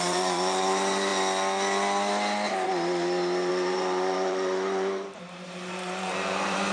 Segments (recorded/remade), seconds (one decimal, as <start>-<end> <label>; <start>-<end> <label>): 0.0-1.1 remade; 1.1-3.5 recorded; 3.5-6.7 remade